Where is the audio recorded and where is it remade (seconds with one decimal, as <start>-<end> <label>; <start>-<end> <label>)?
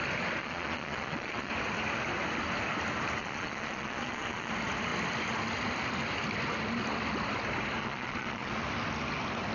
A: 0.0-0.4 recorded; 0.4-1.5 remade; 1.5-3.2 recorded; 3.2-4.5 remade; 4.5-7.8 recorded; 7.8-8.5 remade; 8.5-9.5 recorded